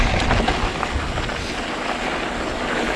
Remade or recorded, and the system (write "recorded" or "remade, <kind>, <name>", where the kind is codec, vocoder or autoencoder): recorded